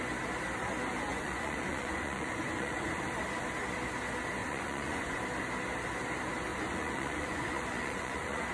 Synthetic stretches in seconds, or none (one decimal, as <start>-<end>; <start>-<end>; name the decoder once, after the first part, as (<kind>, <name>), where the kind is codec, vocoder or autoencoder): 1.1-3.1 (vocoder, Vocos); 4.4-5.2; 6.5-8.5